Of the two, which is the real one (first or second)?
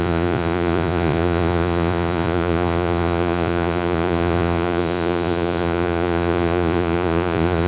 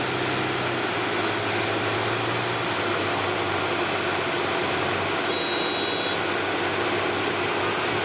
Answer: second